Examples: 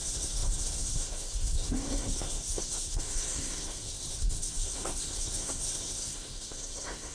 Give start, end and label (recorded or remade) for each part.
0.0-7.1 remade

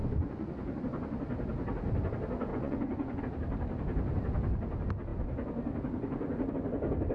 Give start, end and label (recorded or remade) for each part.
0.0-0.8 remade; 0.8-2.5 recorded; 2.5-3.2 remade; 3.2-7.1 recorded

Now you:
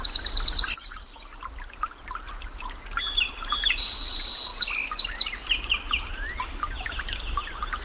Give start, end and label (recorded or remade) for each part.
0.0-7.8 recorded